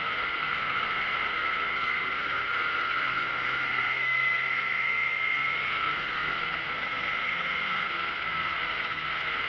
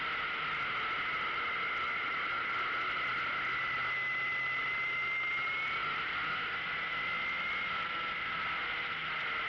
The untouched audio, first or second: second